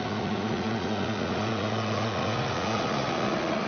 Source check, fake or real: fake